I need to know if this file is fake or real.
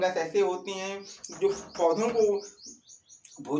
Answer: real